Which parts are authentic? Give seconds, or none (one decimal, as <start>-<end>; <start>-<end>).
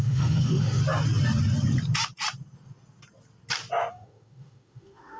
0.8-3.9